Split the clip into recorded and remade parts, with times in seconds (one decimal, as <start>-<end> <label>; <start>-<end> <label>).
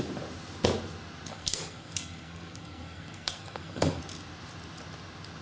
0.0-1.3 recorded; 1.3-4.0 remade; 4.0-5.4 recorded